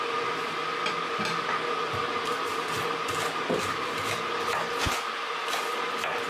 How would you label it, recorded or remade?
recorded